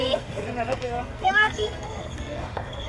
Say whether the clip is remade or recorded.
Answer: remade